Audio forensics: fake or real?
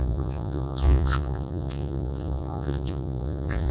fake